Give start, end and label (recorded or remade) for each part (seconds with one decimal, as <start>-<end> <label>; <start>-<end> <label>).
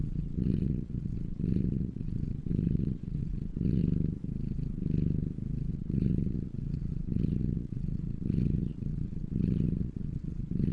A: 0.0-3.8 remade; 3.8-5.7 recorded; 5.7-10.7 remade